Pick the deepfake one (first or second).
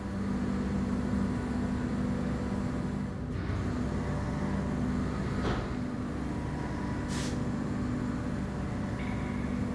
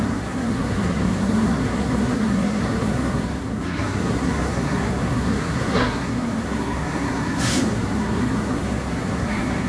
second